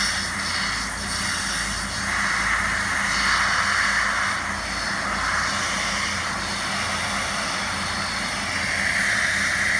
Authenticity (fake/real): real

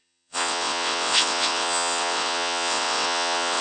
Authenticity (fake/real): fake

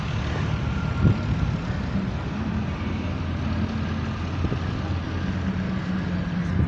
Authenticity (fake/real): real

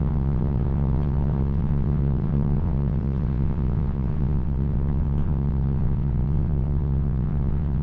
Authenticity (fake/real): fake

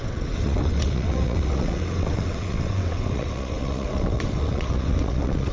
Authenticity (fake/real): fake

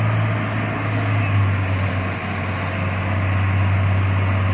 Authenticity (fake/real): real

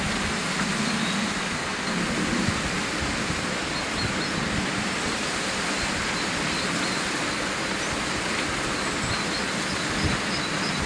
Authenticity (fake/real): real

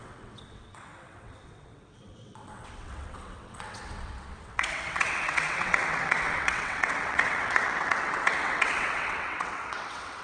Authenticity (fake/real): fake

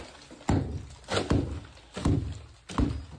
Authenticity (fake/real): real